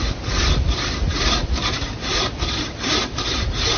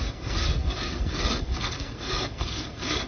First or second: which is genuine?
first